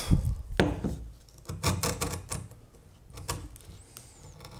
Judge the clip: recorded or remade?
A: recorded